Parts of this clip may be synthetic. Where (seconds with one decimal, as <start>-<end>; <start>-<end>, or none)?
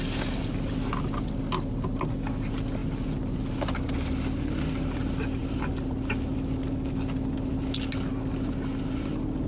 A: none